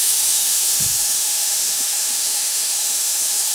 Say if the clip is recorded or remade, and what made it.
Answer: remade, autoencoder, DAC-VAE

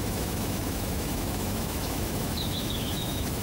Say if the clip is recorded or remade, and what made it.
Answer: remade, autoencoder, DAC-VAE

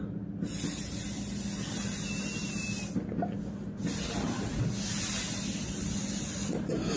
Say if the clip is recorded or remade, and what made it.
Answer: recorded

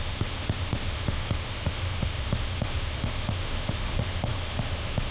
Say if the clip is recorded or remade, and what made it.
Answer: remade, autoencoder, DAC-VAE